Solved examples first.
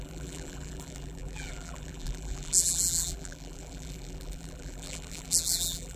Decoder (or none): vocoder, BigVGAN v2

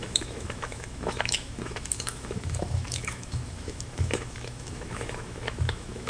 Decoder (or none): autoencoder, DAC-VAE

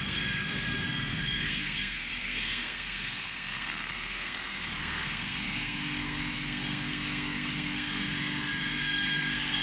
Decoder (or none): codec, SNAC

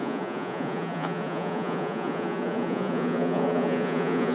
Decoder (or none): vocoder, Vocos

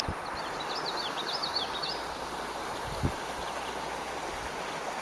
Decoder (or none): none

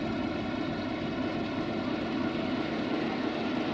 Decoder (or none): none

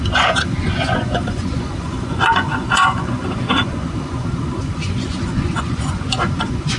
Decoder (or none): vocoder, Vocos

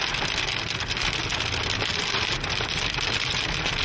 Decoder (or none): none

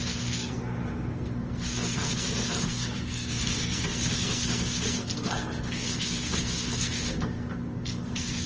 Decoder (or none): codec, SNAC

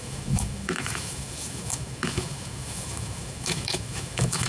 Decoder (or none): autoencoder, DAC-VAE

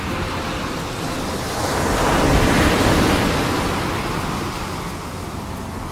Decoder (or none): none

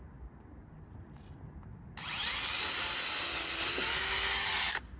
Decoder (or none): none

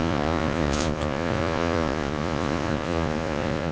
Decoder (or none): vocoder, Vocos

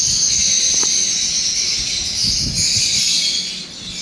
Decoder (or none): none